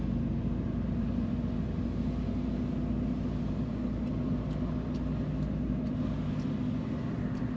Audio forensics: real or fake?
real